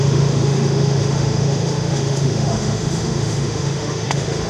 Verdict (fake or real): fake